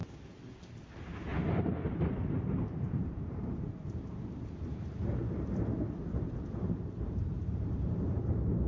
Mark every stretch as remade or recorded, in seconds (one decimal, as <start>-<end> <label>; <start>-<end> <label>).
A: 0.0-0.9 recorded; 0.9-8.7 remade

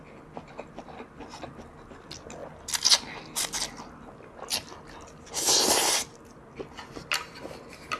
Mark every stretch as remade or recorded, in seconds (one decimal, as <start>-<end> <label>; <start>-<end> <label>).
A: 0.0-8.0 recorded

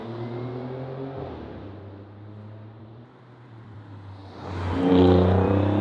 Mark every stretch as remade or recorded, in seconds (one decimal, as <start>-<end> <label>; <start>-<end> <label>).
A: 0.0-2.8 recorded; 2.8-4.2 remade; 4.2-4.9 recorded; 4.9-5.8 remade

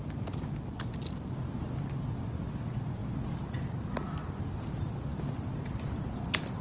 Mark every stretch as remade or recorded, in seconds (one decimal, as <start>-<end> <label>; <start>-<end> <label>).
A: 0.0-6.6 recorded

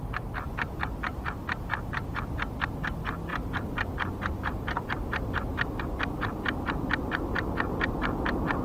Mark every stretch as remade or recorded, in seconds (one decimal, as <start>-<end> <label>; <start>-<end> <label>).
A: 0.0-3.3 recorded; 3.3-5.8 remade; 5.8-8.6 recorded